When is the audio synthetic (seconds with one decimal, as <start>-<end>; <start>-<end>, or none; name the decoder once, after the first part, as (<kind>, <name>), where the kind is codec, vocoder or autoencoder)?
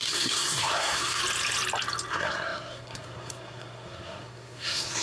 0.0-1.2 (codec, SNAC); 2.1-5.0